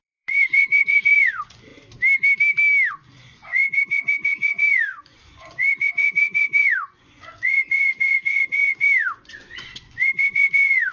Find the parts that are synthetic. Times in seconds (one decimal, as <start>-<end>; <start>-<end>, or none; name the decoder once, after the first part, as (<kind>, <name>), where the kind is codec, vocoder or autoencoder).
0.0-1.7 (vocoder, Vocos); 2.9-10.9